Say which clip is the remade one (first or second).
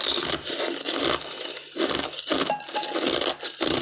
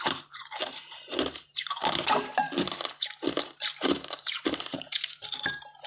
second